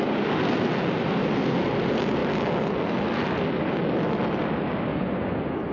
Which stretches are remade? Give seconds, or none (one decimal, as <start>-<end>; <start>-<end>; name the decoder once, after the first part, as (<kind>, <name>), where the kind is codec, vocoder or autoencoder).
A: 4.9-5.7 (vocoder, Vocos)

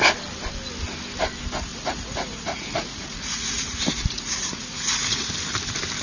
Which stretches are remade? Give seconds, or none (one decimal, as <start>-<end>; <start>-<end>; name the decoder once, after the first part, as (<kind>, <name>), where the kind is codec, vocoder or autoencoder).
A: 1.7-5.3 (vocoder, Vocos)

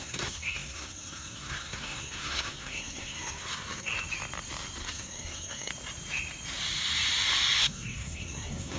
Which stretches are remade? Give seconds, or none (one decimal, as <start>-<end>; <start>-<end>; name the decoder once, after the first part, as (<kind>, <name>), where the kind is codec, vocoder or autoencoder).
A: 0.0-3.9 (codec, SNAC); 4.8-5.7; 7.6-8.8